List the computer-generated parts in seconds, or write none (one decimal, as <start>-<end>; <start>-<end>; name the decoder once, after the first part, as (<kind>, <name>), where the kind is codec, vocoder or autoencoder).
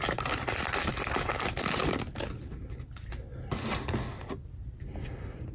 none